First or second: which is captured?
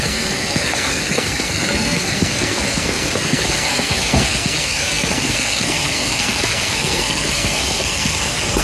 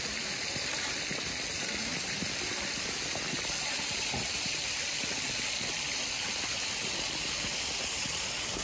second